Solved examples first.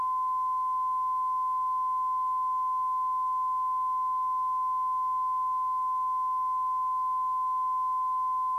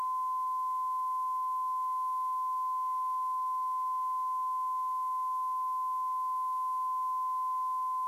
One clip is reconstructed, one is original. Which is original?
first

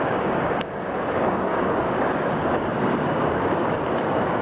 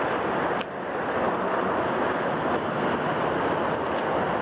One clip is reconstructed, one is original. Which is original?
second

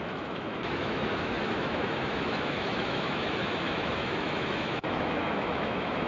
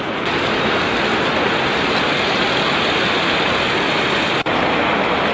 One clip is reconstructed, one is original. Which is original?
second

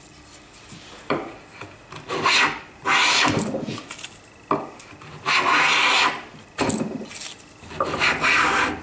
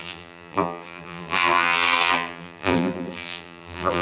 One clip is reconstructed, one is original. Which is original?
first